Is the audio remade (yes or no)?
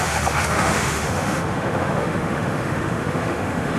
yes